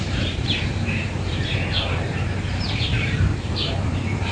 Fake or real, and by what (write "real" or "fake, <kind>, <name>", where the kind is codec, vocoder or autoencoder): fake, vocoder, BigVGAN v2